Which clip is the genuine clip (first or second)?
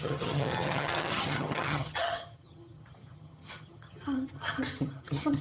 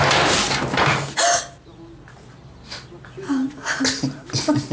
second